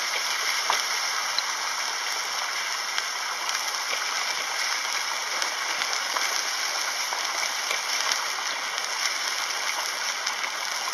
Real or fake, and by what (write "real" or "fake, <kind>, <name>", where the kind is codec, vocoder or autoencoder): real